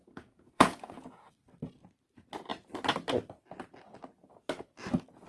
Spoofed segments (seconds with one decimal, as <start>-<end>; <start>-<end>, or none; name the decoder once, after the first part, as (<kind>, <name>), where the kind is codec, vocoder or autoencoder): 0.0-1.3 (vocoder, Vocos)